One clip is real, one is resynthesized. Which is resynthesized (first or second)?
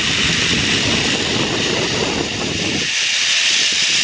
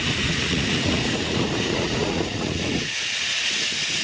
second